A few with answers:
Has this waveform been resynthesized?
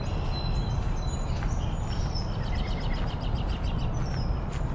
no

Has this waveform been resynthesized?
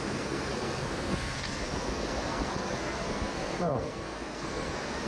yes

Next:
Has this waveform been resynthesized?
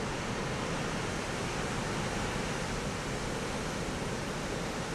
no